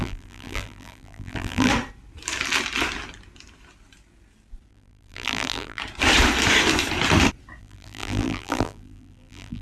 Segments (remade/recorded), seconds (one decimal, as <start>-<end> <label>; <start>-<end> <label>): 0.0-1.7 remade; 1.7-4.7 recorded; 4.7-5.8 remade; 5.8-7.6 recorded; 7.6-9.6 remade